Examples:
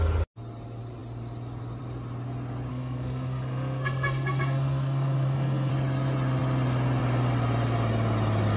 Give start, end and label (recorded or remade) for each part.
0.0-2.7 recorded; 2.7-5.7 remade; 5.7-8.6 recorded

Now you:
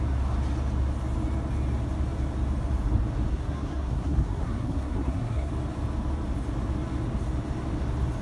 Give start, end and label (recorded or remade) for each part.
0.0-3.3 recorded; 3.3-5.5 remade; 5.5-8.2 recorded